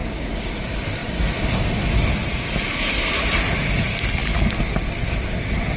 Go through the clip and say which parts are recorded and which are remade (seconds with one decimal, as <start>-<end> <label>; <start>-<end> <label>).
0.0-0.5 remade; 0.5-5.8 recorded